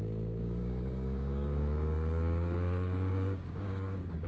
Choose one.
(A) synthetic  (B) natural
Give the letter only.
A